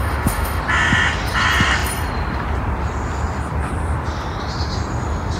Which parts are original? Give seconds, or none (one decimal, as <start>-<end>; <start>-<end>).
0.6-5.4